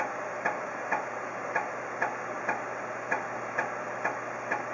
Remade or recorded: recorded